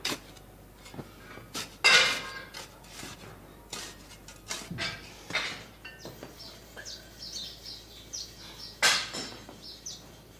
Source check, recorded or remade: recorded